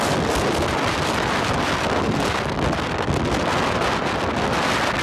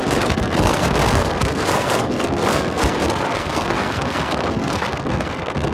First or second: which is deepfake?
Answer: second